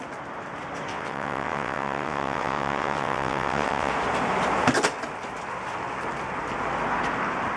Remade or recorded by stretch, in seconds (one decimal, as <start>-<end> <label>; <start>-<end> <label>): 0.0-0.9 recorded; 0.9-3.9 remade; 3.9-7.6 recorded

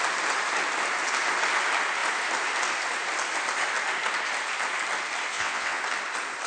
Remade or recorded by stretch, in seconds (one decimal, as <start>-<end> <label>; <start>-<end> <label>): 0.0-5.3 recorded; 5.3-5.8 remade; 5.8-6.5 recorded

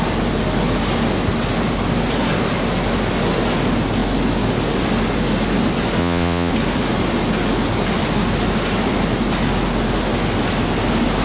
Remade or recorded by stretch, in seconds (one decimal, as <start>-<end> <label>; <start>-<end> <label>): 0.0-6.0 recorded; 6.0-6.5 remade; 6.5-11.2 recorded

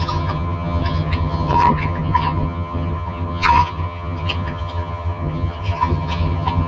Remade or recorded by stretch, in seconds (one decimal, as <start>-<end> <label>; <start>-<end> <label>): 0.0-6.7 remade